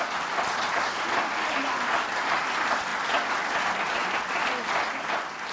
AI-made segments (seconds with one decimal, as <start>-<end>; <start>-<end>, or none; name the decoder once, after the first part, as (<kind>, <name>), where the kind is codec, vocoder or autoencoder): none